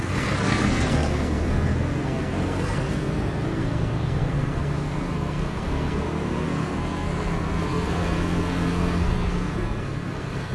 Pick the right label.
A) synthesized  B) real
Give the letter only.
A